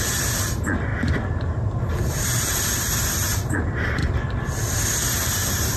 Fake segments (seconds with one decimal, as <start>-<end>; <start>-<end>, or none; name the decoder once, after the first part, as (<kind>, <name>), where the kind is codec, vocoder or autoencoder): 0.0-0.9 (vocoder, BigVGAN v2); 2.1-4.0; 5.0-5.8